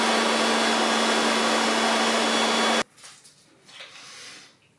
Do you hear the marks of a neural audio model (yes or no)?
no